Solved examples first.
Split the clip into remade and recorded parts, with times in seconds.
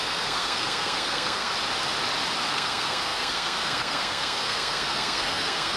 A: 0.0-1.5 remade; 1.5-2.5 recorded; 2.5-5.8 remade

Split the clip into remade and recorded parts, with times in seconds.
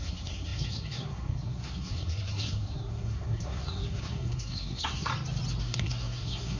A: 0.0-5.1 remade; 5.1-5.6 recorded; 5.6-6.6 remade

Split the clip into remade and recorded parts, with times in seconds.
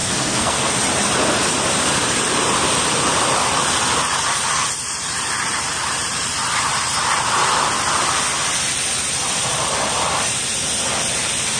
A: 0.0-0.7 remade; 0.7-11.6 recorded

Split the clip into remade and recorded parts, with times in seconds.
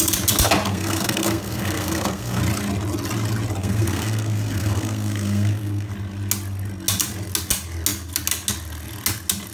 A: 0.0-0.7 recorded; 0.7-2.4 remade; 2.4-3.6 recorded; 3.6-5.9 remade; 5.9-9.5 recorded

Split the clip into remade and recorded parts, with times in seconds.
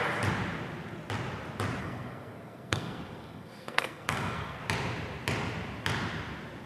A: 0.0-1.8 recorded; 1.8-4.6 remade; 4.6-6.7 recorded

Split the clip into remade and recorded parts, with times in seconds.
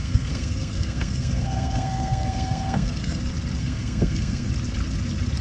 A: 0.0-3.2 remade; 3.2-3.6 recorded; 3.6-4.5 remade; 4.5-5.4 recorded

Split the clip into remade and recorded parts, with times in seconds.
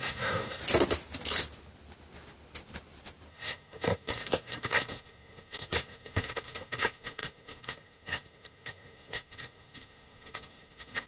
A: 0.0-0.6 remade; 0.6-3.3 recorded; 3.3-11.1 remade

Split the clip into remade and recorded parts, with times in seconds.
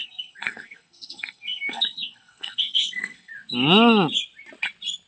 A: 0.0-3.3 remade; 3.3-5.1 recorded